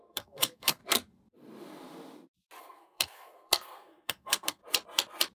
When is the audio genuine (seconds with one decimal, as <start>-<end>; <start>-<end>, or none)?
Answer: 0.8-2.6; 4.6-5.4